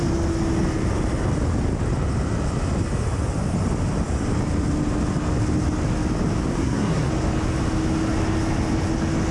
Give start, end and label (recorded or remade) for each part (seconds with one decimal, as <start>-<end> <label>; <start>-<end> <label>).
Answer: 0.0-6.5 recorded; 6.5-7.1 remade; 7.1-9.3 recorded